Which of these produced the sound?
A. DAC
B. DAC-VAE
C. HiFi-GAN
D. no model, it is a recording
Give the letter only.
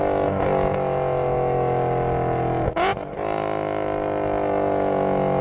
D